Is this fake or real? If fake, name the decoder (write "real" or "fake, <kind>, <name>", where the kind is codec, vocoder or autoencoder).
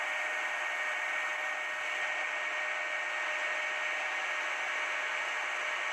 real